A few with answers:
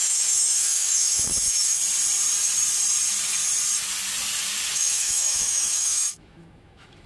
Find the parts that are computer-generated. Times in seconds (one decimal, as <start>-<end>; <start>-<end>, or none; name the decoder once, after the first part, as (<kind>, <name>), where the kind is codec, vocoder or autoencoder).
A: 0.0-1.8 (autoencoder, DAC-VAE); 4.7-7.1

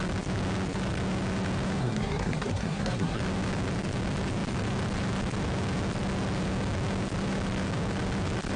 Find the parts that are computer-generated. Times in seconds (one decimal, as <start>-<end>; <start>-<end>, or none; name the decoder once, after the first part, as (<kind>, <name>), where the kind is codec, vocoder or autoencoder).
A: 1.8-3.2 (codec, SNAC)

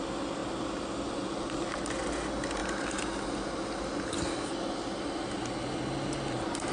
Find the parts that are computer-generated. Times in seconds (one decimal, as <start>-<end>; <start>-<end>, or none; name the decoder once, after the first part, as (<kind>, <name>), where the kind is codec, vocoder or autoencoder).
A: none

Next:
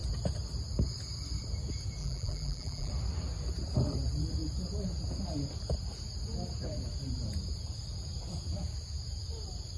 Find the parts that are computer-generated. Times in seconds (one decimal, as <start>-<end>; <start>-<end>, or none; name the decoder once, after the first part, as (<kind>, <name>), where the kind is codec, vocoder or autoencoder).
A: 2.0-2.9 (vocoder, BigVGAN v2)

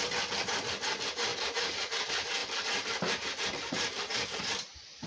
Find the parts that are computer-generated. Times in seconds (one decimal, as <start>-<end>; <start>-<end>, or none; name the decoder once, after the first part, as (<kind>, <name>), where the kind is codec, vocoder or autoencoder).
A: 1.3-2.0 (vocoder, BigVGAN v2); 2.4-4.4

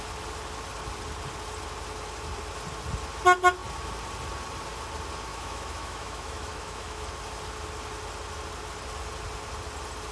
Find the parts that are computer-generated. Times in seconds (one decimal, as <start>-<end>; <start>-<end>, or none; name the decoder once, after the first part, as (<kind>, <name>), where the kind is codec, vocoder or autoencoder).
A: 5.3-7.0 (autoencoder, DAC-VAE)

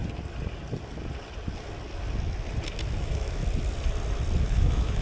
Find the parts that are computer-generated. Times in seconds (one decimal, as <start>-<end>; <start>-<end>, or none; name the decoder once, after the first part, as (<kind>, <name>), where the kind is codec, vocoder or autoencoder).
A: 3.0-3.4 (autoencoder, DAC-VAE); 4.4-5.0

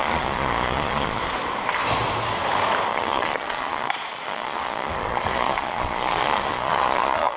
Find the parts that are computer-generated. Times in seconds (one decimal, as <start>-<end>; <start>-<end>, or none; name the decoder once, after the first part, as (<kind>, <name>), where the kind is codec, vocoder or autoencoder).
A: 0.0-1.2 (vocoder, Vocos); 2.9-7.4